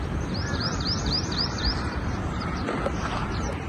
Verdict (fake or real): fake